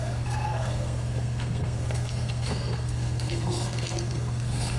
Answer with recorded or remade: remade